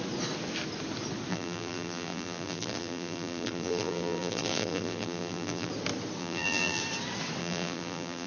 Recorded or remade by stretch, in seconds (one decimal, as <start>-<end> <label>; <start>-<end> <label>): 0.0-1.3 recorded; 1.3-5.7 remade; 5.7-6.2 recorded; 6.2-6.8 remade; 6.8-7.4 recorded; 7.4-8.3 remade